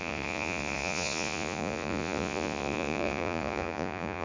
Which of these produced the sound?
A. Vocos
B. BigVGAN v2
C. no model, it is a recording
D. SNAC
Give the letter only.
A